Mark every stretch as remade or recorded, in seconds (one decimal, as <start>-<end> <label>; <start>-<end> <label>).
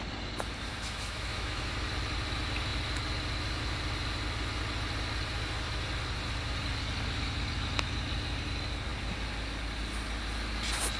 0.0-0.7 recorded; 0.7-1.6 remade; 1.6-11.0 recorded